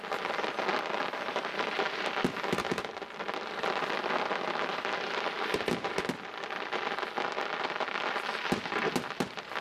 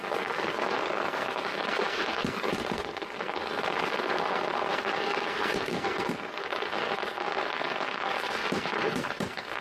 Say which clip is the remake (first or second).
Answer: second